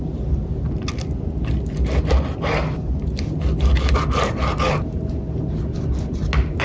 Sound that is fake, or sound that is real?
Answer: real